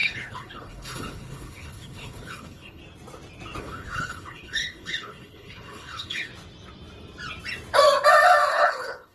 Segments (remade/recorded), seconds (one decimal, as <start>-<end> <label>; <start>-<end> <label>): 0.0-2.8 remade; 2.8-3.6 recorded; 3.6-6.3 remade; 6.3-8.5 recorded; 8.5-9.1 remade